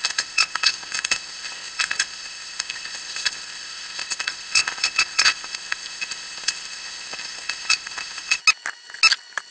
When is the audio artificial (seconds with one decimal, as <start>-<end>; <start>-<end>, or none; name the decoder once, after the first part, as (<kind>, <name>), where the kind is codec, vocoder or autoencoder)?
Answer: 0.0-8.4 (codec, ZipCodec)